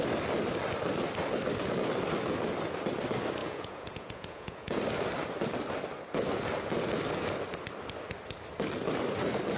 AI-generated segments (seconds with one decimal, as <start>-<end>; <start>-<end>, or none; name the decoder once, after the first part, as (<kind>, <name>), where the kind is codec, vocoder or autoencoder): 3.4-4.8 (vocoder, Vocos)